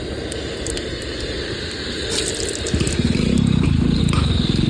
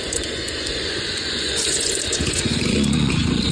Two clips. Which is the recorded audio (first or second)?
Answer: first